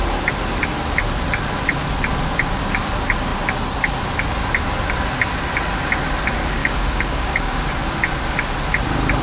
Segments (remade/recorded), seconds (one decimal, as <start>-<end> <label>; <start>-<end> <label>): 0.0-6.6 recorded; 6.6-7.7 remade; 7.7-9.2 recorded